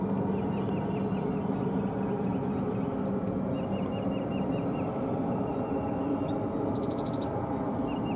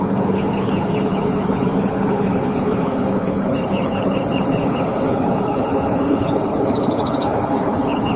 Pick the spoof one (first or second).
second